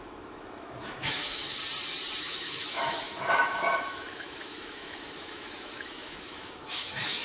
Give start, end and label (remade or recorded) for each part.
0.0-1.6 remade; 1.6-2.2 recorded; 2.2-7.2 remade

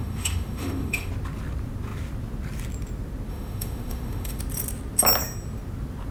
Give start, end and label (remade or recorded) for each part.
0.0-1.1 remade; 1.1-3.3 recorded; 3.3-4.4 remade; 4.4-6.1 recorded